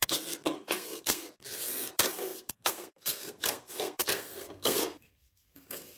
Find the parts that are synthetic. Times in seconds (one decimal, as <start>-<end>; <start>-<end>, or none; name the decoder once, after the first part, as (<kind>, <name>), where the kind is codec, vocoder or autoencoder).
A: 0.0-6.0 (codec, SNAC)